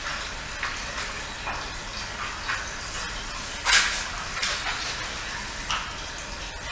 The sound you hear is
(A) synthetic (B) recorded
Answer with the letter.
B